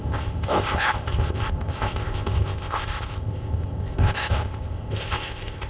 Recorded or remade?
remade